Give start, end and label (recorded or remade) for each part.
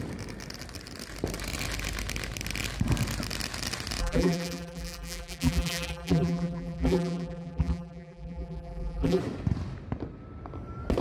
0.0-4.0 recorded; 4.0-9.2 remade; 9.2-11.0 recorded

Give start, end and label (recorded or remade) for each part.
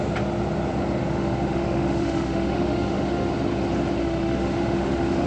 0.0-1.0 recorded; 1.0-3.3 remade; 3.3-4.0 recorded; 4.0-5.3 remade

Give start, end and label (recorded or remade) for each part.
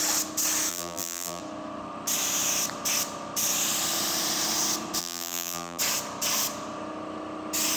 0.0-0.7 recorded; 0.7-1.4 remade; 1.4-5.0 recorded; 5.0-5.8 remade; 5.8-7.8 recorded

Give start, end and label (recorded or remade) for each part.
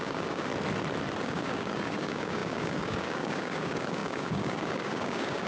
0.0-0.5 remade; 0.5-1.2 recorded; 1.2-5.5 remade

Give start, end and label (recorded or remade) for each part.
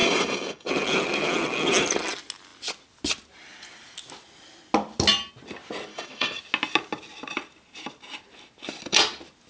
0.0-0.7 remade; 0.7-5.9 recorded; 5.9-6.4 remade; 6.4-9.5 recorded